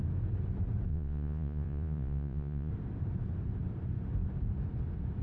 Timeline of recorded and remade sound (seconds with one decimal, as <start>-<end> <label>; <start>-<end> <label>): 0.0-0.9 recorded; 0.9-2.7 remade; 2.7-5.2 recorded